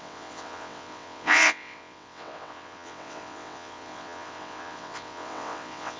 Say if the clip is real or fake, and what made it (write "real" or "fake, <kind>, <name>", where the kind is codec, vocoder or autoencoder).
fake, vocoder, WaveNeXt